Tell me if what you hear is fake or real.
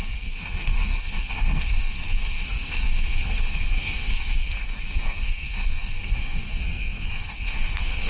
fake